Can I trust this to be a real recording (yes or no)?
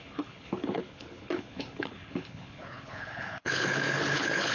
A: no